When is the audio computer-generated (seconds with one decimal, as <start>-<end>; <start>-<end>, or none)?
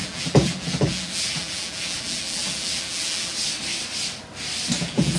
0.0-3.3; 4.8-5.2